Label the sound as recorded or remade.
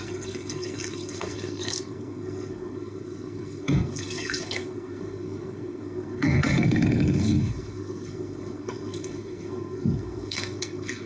remade